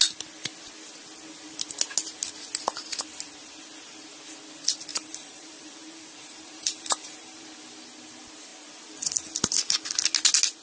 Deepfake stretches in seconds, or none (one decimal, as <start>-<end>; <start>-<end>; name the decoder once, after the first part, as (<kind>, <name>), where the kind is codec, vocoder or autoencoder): 4.9-7.6 (vocoder, BigVGAN v2)